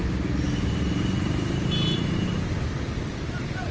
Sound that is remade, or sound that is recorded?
recorded